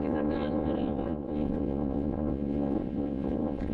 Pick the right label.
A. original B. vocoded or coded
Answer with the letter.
B